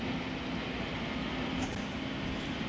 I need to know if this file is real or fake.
real